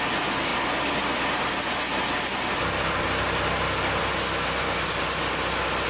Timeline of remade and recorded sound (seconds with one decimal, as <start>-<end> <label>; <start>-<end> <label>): 0.0-5.9 recorded